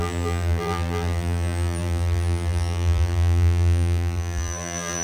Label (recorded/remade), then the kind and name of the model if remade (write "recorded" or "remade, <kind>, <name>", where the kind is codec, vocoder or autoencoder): remade, vocoder, BigVGAN v2